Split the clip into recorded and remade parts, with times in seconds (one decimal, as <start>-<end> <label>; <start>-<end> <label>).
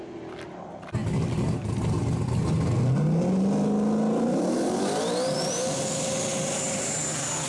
0.0-7.5 recorded